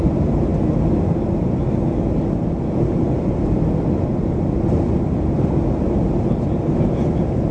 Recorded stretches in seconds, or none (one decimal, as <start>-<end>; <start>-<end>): 0.0-7.5